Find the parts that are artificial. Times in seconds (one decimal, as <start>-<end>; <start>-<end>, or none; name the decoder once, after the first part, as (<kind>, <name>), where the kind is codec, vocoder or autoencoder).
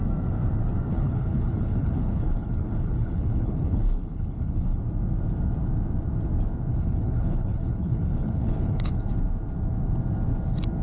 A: 0.9-4.8 (codec, HILCodec); 6.7-9.0